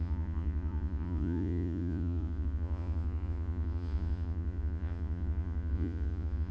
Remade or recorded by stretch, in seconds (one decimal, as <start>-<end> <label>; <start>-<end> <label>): 0.0-6.5 remade